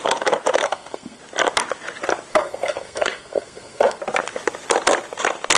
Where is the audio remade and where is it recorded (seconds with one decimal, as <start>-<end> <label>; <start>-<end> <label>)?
0.0-0.6 recorded; 0.6-1.2 remade; 1.2-2.3 recorded; 2.3-4.0 remade; 4.0-5.6 recorded